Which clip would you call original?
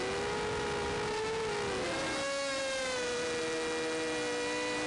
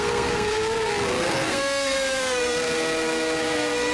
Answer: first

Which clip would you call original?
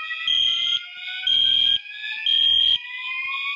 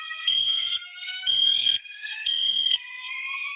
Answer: first